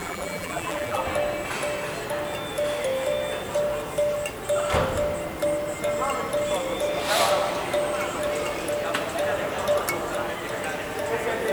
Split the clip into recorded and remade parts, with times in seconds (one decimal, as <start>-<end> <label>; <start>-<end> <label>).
0.0-1.0 remade; 1.0-11.5 recorded